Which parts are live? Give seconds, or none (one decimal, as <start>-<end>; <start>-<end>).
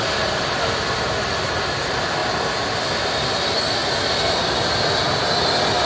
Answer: 0.0-5.8